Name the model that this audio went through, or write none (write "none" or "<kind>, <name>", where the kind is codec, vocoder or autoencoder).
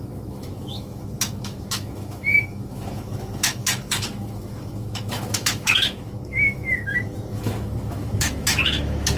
autoencoder, DAC-VAE